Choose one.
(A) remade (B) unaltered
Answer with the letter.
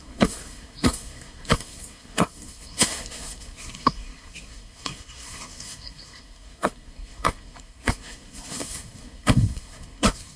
A